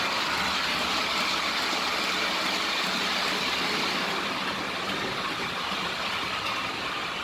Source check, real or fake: real